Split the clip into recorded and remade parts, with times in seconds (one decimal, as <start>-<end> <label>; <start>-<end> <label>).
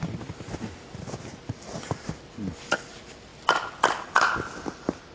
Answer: 0.0-5.1 recorded